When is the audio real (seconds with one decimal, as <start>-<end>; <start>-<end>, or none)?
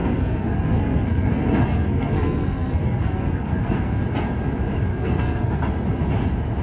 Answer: 4.0-4.9; 5.6-6.6